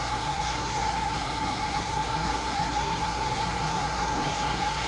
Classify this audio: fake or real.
fake